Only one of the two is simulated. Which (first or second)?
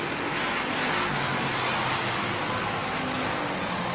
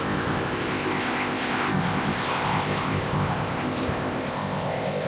second